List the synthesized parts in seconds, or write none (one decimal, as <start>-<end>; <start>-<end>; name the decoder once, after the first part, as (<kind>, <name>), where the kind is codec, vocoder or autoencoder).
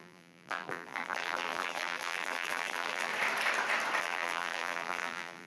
0.0-3.1 (vocoder, BigVGAN v2); 4.0-5.5